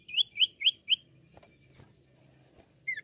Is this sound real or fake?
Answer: real